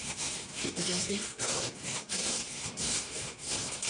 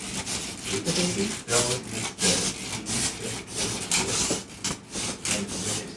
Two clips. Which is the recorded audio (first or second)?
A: second